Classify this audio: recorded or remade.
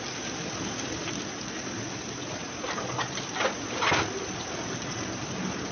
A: recorded